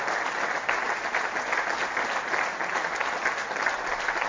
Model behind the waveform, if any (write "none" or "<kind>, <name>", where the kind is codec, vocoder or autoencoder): none